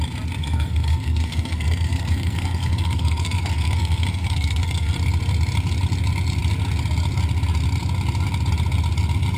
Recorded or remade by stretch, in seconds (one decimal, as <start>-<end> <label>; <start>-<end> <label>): 0.0-0.4 recorded; 0.4-4.9 remade; 4.9-9.4 recorded